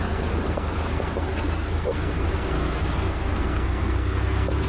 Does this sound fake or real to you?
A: fake